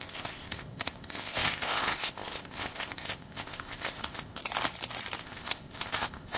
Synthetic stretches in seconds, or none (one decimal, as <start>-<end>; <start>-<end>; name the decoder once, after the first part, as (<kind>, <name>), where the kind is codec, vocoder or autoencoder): 0.0-4.4 (codec, ZipCodec); 5.2-6.4